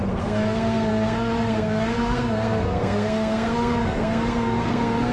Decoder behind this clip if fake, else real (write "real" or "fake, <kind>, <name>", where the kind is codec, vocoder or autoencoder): fake, codec, SNAC